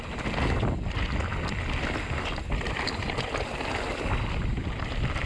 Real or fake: real